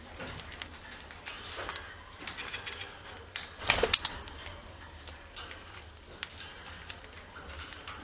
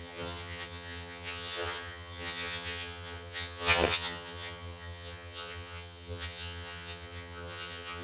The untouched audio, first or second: first